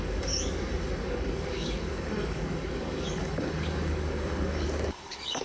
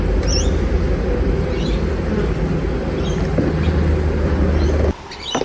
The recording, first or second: second